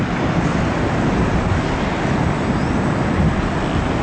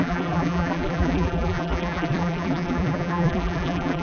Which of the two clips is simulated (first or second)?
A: second